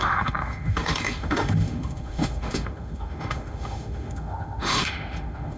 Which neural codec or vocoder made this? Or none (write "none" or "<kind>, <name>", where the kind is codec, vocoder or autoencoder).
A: autoencoder, DAC-VAE